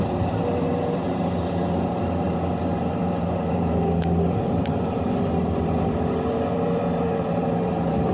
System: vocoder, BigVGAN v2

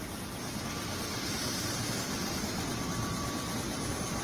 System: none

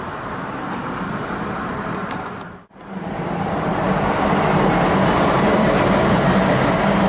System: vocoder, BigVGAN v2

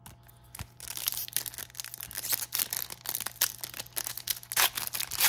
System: none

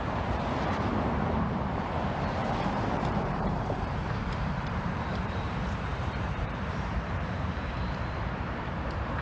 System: vocoder, BigVGAN v2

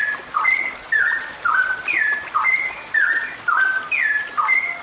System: none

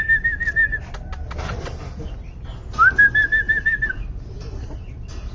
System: none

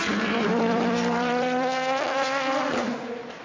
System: vocoder, BigVGAN v2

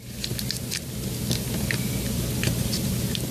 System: none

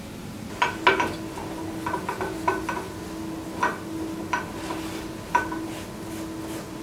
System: none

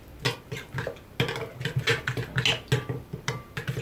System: none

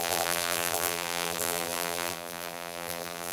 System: vocoder, BigVGAN v2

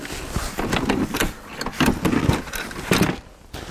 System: none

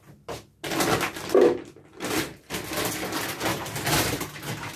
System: none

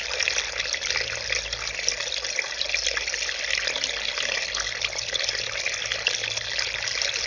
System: none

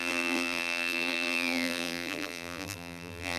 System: vocoder, BigVGAN v2